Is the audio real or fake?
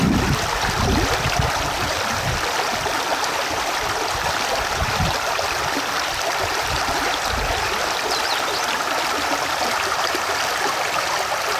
fake